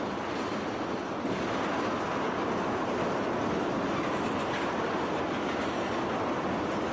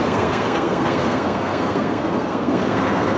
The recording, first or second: first